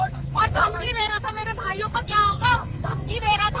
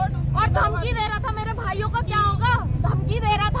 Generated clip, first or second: first